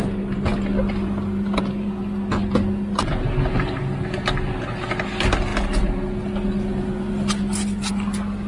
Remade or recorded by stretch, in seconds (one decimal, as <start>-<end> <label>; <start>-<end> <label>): 0.0-8.5 recorded